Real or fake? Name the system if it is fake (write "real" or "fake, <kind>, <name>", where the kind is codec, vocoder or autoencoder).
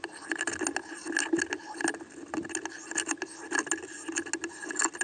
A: real